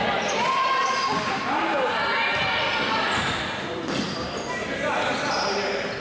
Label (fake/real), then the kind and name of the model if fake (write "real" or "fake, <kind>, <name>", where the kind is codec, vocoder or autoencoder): real